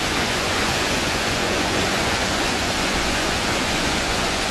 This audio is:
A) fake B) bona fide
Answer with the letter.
A